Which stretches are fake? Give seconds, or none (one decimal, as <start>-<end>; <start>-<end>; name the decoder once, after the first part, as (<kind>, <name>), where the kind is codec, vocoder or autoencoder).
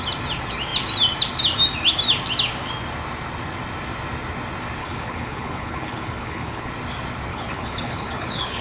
4.8-6.7 (codec, HILCodec); 7.3-8.6